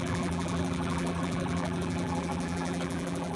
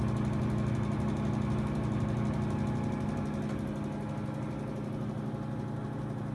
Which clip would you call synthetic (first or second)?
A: first